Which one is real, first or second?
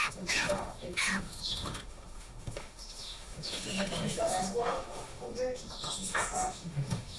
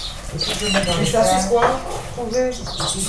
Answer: second